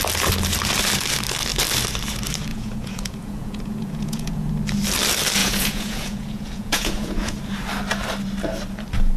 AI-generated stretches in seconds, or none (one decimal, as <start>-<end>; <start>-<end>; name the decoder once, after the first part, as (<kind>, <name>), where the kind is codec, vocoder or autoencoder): 2.5-4.5 (vocoder, Vocos); 5.4-7.4